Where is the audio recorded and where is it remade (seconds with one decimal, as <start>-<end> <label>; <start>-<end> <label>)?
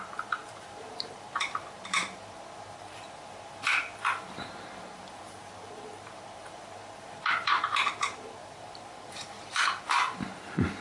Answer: 0.0-10.8 remade